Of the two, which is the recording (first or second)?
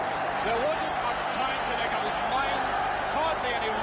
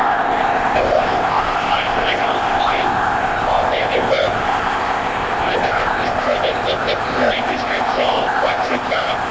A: first